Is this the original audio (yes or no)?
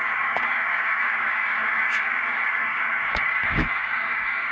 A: no